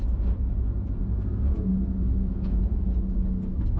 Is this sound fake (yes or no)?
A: yes